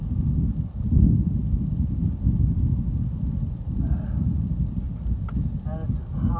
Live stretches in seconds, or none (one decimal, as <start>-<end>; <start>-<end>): 0.0-6.4